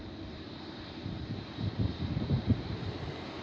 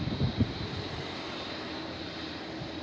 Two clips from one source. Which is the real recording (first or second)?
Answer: second